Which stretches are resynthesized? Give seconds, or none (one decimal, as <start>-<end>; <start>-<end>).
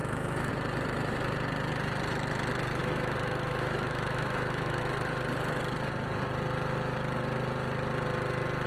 0.0-0.5; 2.8-4.8